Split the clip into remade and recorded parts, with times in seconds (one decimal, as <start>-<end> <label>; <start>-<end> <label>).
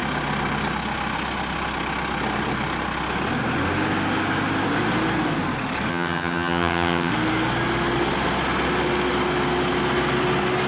0.0-5.9 recorded; 5.9-7.1 remade; 7.1-10.7 recorded